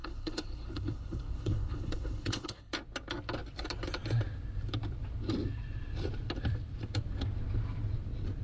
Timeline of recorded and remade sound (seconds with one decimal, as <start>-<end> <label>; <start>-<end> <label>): 0.0-2.7 remade; 2.7-8.4 recorded